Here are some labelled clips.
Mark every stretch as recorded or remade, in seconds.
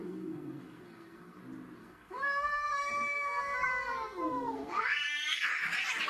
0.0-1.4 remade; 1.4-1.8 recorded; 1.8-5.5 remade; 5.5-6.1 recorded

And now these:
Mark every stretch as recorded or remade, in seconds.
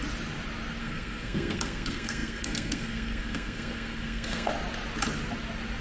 0.0-0.8 recorded; 0.8-4.5 remade; 4.5-5.8 recorded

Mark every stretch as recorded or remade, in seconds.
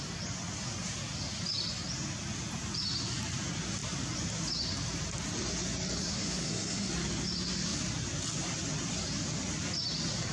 0.0-6.0 recorded; 6.0-6.9 remade; 6.9-10.3 recorded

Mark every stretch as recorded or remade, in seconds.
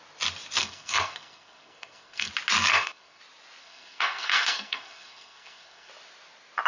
0.0-0.6 recorded; 0.6-2.3 remade; 2.3-2.7 recorded; 2.7-3.2 remade; 3.2-3.6 recorded; 3.6-5.9 remade; 5.9-6.7 recorded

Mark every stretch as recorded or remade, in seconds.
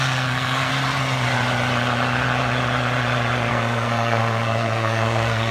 0.0-0.7 remade; 0.7-3.5 recorded; 3.5-5.5 remade